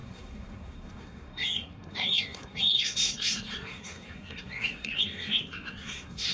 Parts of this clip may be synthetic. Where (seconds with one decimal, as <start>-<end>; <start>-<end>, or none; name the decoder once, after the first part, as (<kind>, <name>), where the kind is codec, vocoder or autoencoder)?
0.0-6.3 (codec, SNAC)